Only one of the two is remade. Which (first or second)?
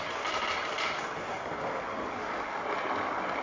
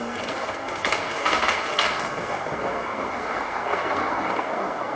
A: second